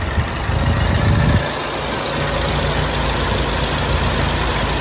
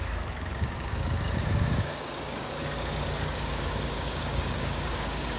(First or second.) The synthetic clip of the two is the second